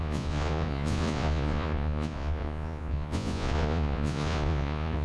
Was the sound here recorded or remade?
remade